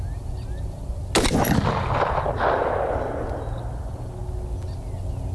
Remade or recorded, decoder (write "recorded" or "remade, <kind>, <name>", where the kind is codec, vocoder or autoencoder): recorded